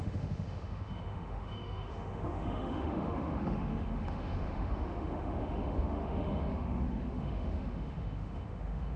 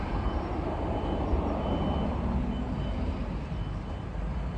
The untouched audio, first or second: second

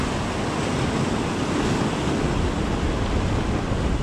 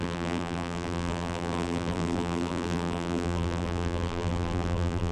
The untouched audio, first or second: first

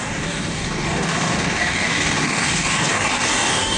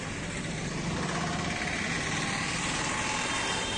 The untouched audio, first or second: second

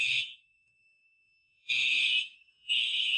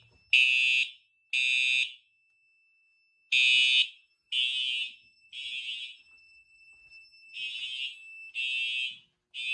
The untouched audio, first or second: second